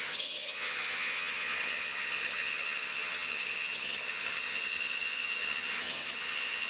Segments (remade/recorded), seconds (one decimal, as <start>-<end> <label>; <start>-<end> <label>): 0.0-6.7 remade